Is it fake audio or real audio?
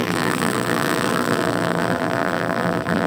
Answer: fake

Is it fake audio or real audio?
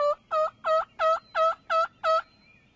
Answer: real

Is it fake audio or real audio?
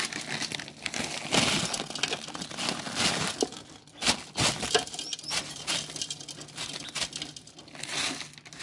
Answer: real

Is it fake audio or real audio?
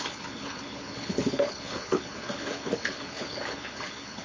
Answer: fake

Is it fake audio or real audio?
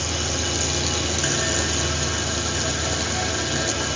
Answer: real